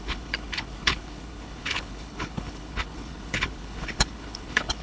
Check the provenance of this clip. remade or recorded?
remade